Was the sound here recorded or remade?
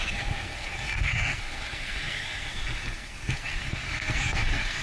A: remade